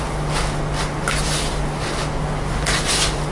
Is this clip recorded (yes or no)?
yes